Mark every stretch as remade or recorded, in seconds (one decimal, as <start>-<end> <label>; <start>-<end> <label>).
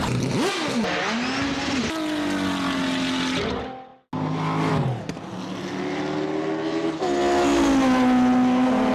0.0-8.9 recorded